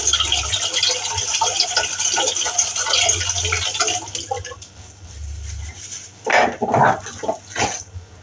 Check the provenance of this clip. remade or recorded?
recorded